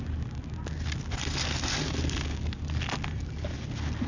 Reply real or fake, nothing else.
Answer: real